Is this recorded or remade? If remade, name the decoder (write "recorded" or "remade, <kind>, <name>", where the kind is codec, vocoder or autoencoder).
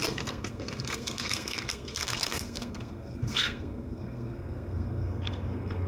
remade, codec, SNAC